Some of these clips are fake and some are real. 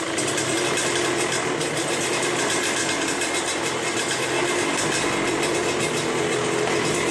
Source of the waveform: real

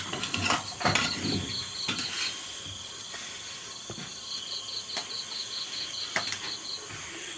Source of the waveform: real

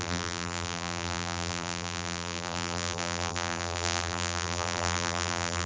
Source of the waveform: fake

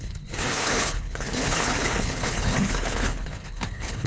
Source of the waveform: fake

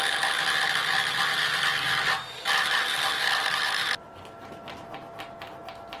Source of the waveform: real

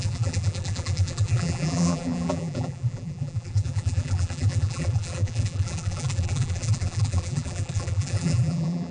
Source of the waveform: fake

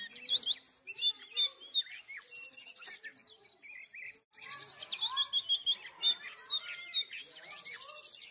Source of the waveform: real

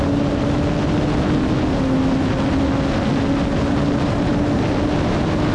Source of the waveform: real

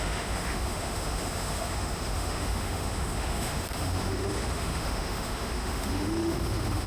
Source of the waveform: fake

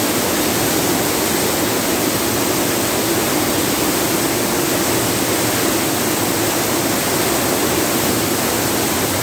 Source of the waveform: real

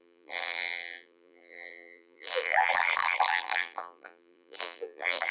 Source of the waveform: fake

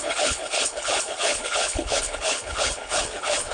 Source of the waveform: fake